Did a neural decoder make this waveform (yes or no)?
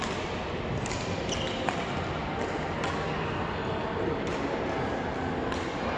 no